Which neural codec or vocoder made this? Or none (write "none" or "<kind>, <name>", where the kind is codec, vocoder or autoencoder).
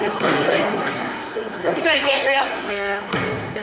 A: codec, SNAC